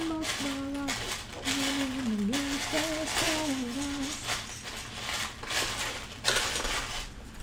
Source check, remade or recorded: recorded